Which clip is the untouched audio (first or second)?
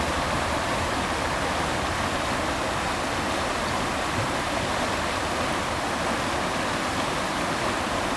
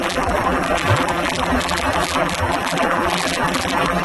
first